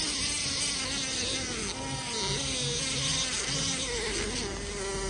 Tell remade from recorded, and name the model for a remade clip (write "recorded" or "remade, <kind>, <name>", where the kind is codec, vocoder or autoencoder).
recorded